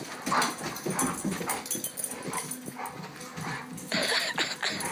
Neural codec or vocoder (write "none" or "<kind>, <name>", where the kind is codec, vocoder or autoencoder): none